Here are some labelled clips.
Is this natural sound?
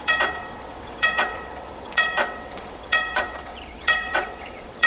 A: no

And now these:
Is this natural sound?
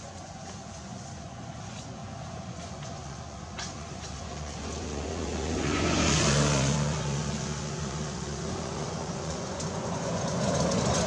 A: no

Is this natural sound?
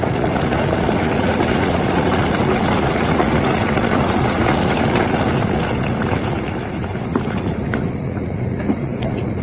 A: no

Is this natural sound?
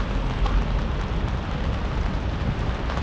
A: no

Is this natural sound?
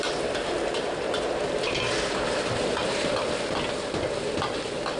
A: yes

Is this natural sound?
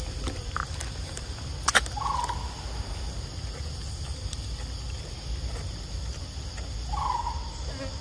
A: yes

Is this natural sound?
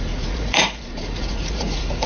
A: no